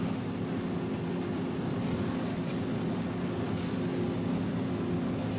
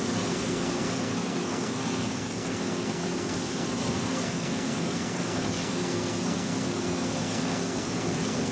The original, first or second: first